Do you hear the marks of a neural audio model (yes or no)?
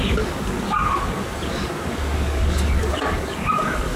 yes